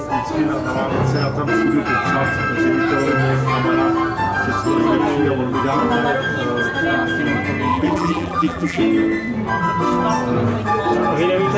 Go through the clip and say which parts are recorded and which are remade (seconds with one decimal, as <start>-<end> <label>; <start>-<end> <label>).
0.0-7.7 recorded; 7.7-8.8 remade; 8.8-11.6 recorded

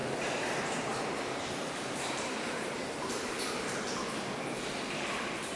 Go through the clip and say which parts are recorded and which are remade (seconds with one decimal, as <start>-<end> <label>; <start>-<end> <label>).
0.0-3.4 remade; 3.4-5.6 recorded

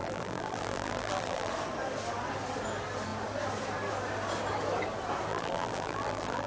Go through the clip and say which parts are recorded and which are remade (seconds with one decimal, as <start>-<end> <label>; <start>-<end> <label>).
0.0-1.5 remade; 1.5-5.3 recorded; 5.3-6.5 remade

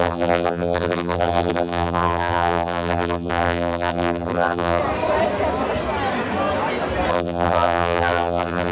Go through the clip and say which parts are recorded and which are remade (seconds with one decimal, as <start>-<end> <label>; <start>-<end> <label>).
0.0-4.8 remade; 4.8-7.1 recorded; 7.1-8.7 remade

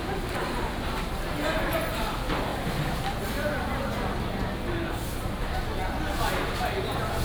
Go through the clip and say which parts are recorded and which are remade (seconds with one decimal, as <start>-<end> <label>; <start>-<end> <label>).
0.0-7.2 recorded